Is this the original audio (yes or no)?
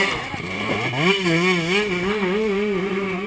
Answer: yes